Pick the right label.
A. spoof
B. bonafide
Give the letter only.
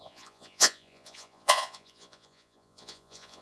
A